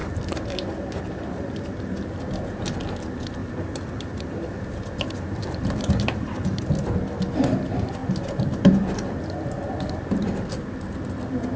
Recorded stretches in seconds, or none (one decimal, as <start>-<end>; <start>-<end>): 2.0-3.4; 6.7-11.6